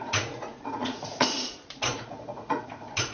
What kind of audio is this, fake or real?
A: fake